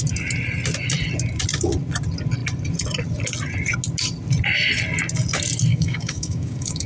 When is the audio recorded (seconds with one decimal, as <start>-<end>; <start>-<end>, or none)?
0.0-5.7

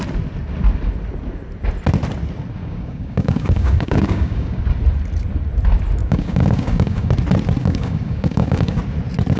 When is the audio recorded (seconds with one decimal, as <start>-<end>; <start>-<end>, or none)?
0.0-2.6; 4.6-6.0; 7.1-7.6; 8.8-9.4

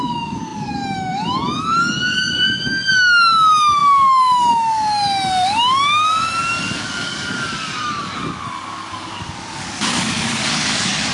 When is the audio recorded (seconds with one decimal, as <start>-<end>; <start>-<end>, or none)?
none